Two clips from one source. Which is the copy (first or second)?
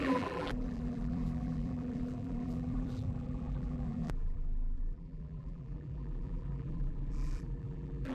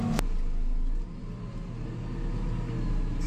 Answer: first